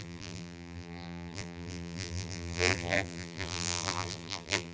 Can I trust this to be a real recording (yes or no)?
no